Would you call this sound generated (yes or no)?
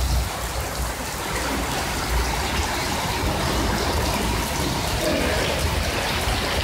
no